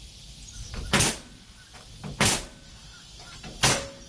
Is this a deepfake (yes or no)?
no